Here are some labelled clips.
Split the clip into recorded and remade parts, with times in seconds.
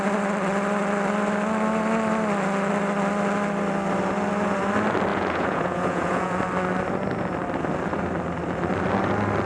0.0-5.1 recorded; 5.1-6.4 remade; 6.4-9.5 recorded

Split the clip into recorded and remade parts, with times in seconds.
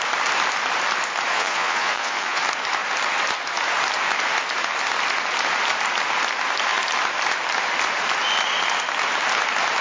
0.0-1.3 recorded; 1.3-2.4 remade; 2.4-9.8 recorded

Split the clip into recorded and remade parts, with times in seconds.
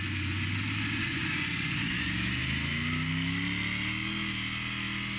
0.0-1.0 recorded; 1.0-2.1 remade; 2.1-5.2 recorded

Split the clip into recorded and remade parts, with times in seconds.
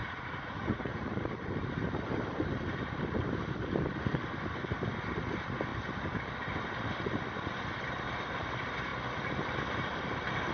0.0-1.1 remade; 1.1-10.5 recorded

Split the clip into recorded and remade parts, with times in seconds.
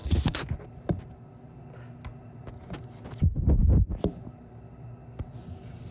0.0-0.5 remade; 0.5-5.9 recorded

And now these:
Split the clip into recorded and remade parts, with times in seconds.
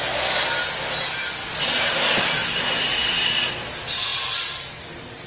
0.0-1.4 recorded; 1.4-1.9 remade; 1.9-2.9 recorded; 2.9-3.5 remade; 3.5-5.3 recorded